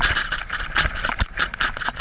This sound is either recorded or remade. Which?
recorded